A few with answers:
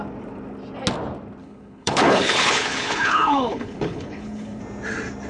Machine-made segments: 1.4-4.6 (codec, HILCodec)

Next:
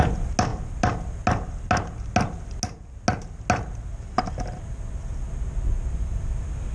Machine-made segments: none

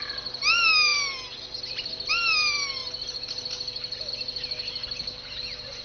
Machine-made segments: none

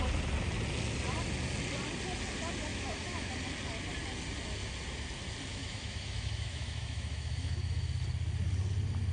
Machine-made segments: 2.7-3.3 (autoencoder, DAC-VAE); 5.5-7.9

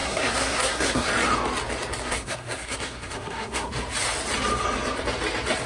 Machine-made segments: 0.0-1.1 (codec, SNAC); 2.0-3.7

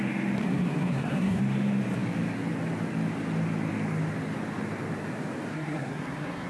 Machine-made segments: 0.4-1.4 (codec, SNAC); 5.5-6.5

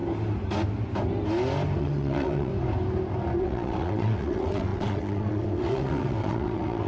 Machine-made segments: 1.8-2.5 (vocoder, WaveNeXt); 3.4-6.9